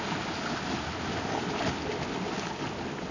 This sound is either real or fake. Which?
real